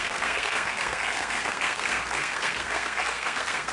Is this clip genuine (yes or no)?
no